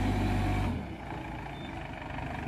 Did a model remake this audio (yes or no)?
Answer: no